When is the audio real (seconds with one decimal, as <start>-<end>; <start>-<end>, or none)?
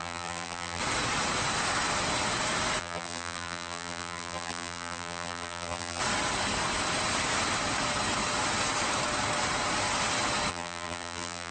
0.8-2.8; 6.0-10.5